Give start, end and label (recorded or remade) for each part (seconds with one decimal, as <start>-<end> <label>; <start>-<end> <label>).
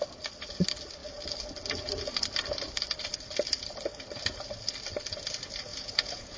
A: 0.0-5.7 recorded; 5.7-6.4 remade